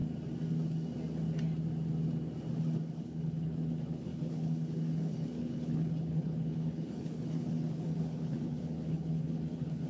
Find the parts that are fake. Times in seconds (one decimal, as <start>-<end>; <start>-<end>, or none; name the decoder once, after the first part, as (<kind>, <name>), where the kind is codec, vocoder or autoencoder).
3.0-9.9 (codec, HILCodec)